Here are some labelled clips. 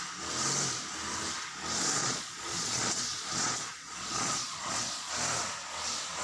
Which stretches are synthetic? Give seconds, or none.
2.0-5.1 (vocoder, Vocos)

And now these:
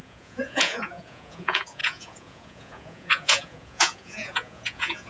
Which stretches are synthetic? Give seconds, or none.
0.0-5.1 (vocoder, Vocos)

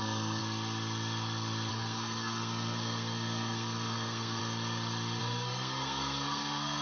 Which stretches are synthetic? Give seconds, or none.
0.0-0.4 (codec, SNAC); 1.7-4.4; 5.2-6.8

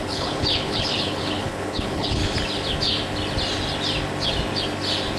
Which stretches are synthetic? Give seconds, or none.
0.0-2.2 (codec, HILCodec)